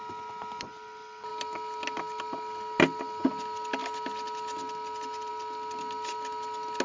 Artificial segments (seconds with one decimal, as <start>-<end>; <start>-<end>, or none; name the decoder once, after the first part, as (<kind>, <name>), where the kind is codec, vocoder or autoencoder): none